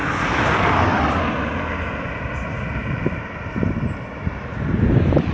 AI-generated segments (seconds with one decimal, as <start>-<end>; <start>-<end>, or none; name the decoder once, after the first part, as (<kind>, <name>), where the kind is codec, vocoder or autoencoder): none